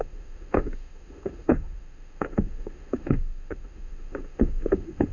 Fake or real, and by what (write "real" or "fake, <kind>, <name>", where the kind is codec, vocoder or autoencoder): fake, autoencoder, DAC-VAE